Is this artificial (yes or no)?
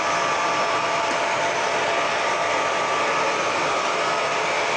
yes